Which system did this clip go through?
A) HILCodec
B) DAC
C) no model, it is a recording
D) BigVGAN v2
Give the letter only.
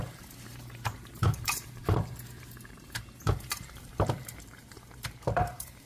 D